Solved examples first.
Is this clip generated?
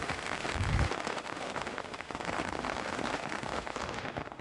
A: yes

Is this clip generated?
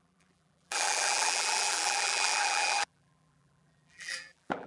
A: yes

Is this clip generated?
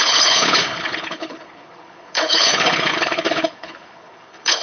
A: yes